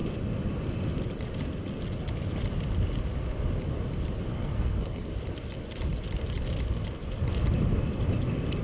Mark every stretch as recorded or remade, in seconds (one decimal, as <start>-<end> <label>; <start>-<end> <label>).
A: 0.0-4.3 recorded; 4.3-5.1 remade; 5.1-8.6 recorded